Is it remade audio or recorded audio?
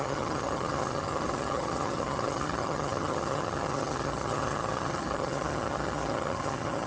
remade